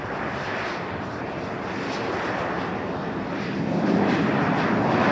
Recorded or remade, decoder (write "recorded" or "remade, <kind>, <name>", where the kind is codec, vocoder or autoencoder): recorded